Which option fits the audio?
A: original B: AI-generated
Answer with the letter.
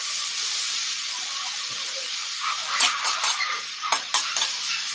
B